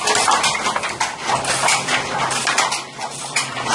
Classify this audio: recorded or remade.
recorded